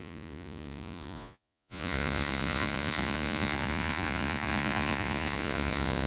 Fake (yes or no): yes